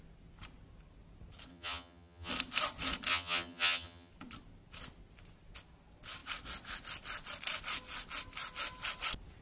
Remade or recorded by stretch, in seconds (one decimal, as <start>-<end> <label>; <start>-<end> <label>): 0.0-1.5 recorded; 1.5-2.3 remade; 2.3-3.1 recorded; 3.1-4.1 remade; 4.1-9.4 recorded